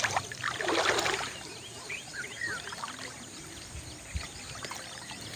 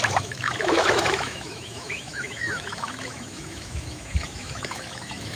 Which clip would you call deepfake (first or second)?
second